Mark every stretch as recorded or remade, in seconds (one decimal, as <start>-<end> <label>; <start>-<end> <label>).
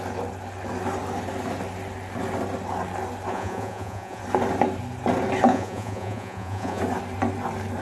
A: 0.0-3.3 recorded; 3.3-4.2 remade; 4.2-5.5 recorded; 5.5-6.8 remade; 6.8-7.8 recorded